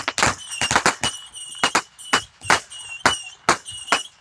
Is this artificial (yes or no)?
no